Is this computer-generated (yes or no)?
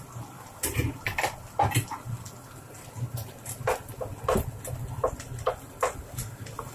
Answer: no